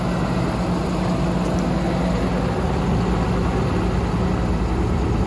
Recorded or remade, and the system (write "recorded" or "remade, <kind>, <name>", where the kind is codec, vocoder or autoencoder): recorded